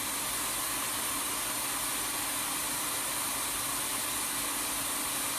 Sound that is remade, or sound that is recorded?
recorded